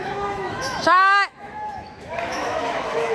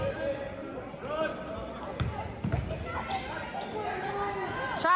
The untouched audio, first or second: second